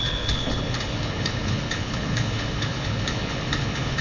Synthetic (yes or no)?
yes